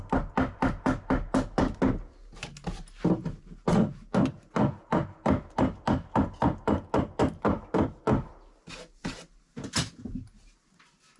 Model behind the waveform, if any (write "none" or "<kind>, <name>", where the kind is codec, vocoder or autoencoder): none